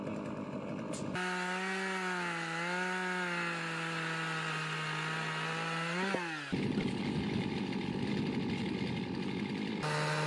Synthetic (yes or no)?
no